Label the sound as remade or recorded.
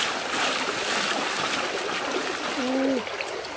recorded